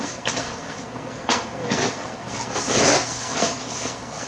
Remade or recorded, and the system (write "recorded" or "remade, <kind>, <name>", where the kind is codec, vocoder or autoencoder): remade, codec, SNAC